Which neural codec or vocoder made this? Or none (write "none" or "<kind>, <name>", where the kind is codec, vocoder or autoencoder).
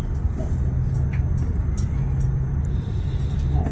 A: none